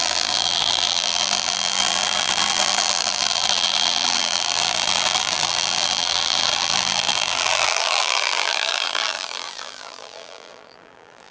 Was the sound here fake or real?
fake